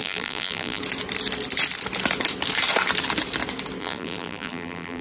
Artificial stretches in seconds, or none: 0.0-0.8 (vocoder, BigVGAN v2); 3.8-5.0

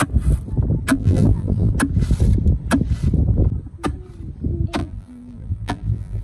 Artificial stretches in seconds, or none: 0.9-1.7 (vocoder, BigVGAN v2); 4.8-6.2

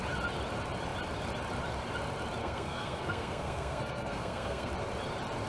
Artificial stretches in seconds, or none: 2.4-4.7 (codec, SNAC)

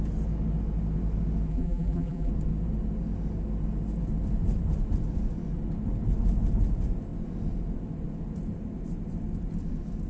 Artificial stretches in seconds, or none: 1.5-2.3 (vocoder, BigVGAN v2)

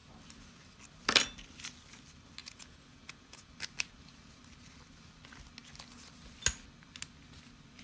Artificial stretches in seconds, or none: 2.4-3.5 (vocoder, Vocos)

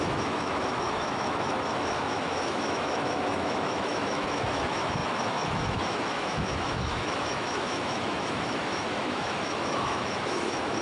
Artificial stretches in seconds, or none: 0.0-10.8 (autoencoder, DAC-VAE)

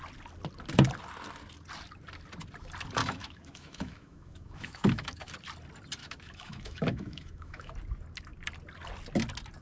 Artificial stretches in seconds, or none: 3.0-5.3 (autoencoder, DAC-VAE); 6.0-7.7

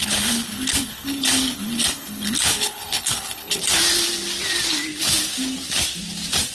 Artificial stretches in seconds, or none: 0.0-3.6 (codec, HILCodec)